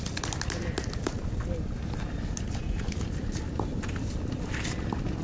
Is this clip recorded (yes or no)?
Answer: yes